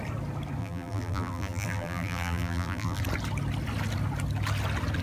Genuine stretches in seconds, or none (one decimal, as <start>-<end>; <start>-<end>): 0.0-0.6; 3.0-5.0